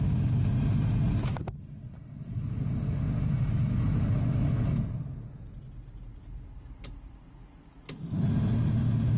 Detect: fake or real real